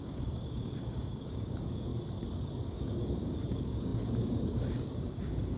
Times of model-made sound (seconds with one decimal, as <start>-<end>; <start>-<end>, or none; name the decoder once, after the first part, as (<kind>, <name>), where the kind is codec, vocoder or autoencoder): 0.0-1.9 (codec, DAC); 2.5-5.6